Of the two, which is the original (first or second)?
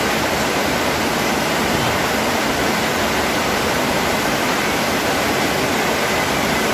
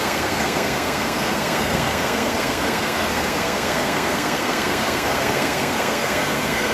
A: first